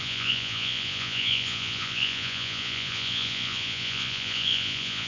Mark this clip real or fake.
fake